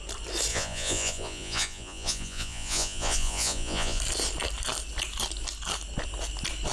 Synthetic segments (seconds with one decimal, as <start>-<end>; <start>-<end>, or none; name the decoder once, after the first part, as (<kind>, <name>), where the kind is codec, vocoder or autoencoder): 0.5-4.0 (vocoder, Vocos)

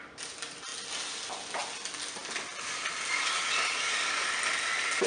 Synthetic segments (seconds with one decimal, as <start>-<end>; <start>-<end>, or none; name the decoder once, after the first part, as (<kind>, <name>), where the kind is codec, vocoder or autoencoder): none

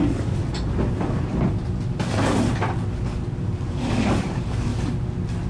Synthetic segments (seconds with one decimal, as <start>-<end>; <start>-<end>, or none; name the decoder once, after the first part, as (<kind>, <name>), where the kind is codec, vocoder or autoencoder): 0.0-0.4 (codec, DAC); 3.7-4.7

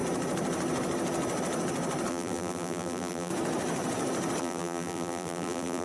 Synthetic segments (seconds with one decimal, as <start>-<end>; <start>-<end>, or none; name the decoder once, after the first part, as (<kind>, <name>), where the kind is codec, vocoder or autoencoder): 2.1-3.3 (vocoder, BigVGAN v2); 4.4-5.8